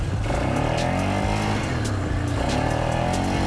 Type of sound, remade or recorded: recorded